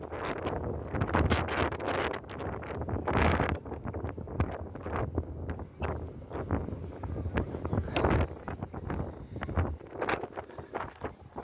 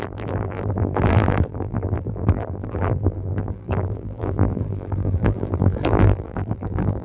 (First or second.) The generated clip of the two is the second